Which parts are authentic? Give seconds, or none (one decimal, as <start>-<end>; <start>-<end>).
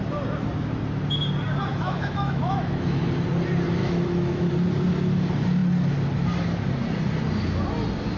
0.0-1.7; 3.0-3.8; 4.5-8.2